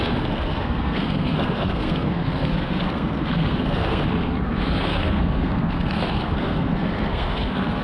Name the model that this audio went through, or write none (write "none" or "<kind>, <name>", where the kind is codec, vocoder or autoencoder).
codec, SNAC